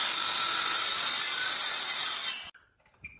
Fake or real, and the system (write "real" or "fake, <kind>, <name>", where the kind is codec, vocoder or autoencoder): real